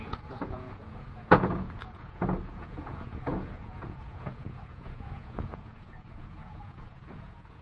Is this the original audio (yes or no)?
no